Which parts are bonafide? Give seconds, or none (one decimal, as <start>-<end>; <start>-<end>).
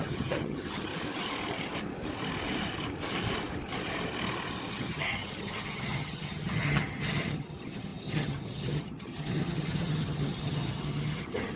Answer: 0.9-4.7